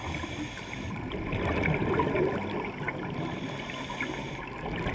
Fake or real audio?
real